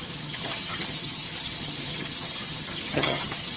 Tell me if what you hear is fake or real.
fake